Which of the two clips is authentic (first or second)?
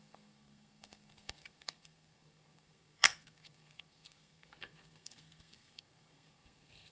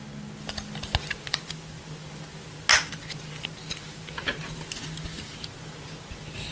second